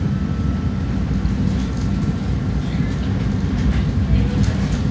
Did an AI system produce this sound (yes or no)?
no